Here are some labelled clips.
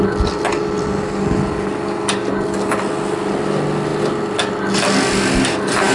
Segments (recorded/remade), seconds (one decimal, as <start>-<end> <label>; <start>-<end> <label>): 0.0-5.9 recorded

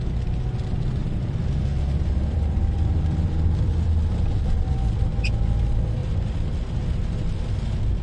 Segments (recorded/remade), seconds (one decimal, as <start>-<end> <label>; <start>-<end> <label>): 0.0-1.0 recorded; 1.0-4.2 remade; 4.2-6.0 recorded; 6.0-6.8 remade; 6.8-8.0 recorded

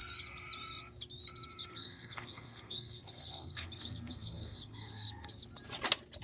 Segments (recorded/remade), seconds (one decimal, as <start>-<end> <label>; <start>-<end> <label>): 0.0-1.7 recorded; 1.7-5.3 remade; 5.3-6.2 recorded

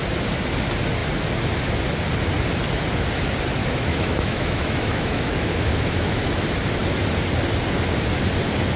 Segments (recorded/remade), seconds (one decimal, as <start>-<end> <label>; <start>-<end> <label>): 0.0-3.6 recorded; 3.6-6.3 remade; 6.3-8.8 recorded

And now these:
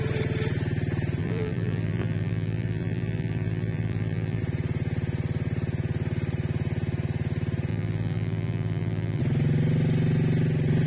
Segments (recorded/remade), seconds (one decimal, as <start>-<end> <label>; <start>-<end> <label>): 0.0-1.2 recorded; 1.2-4.4 remade; 4.4-7.7 recorded; 7.7-9.2 remade; 9.2-10.9 recorded

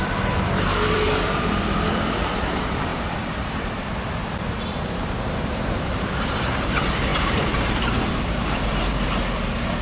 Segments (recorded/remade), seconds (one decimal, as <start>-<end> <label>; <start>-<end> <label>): 0.0-9.8 remade

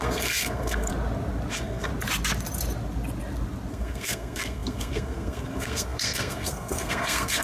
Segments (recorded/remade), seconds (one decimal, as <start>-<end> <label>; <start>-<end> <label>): 0.0-0.9 remade; 0.9-1.5 recorded; 1.5-1.9 remade; 1.9-3.7 recorded; 3.7-7.4 remade

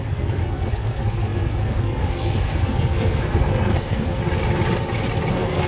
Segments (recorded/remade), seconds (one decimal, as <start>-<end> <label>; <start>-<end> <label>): 0.0-4.2 remade; 4.2-5.3 recorded; 5.3-5.7 remade